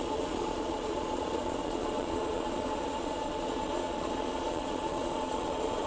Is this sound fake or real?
fake